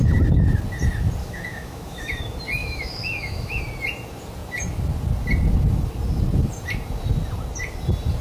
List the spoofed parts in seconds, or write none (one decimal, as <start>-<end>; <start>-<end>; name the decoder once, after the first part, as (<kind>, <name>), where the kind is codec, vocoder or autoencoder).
1.2-2.2 (autoencoder, DAC-VAE); 2.6-3.6

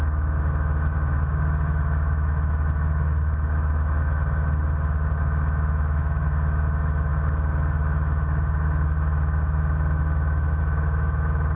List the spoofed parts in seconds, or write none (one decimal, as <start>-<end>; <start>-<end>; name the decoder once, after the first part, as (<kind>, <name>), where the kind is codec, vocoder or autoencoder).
0.0-11.6 (autoencoder, DAC-VAE)

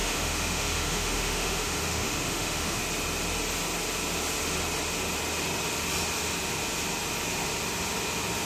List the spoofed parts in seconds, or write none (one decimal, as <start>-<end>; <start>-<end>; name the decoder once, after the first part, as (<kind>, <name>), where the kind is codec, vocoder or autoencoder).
0.0-2.8 (autoencoder, DAC-VAE)

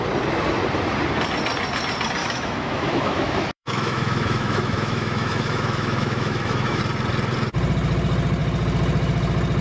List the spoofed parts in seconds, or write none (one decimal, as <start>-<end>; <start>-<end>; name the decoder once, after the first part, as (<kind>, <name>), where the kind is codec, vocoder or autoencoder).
2.2-6.8 (autoencoder, DAC-VAE)